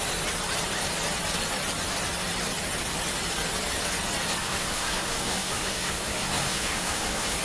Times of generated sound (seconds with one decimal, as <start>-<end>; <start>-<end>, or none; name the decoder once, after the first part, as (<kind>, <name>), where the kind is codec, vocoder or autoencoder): 4.4-7.4 (codec, SNAC)